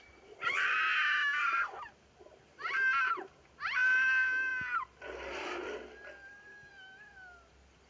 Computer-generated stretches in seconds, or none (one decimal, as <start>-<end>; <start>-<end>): none